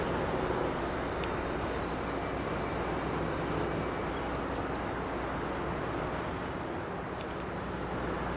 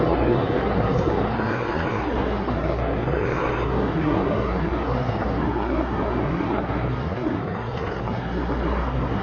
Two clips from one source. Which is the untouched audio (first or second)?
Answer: first